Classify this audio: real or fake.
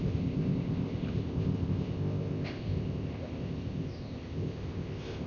fake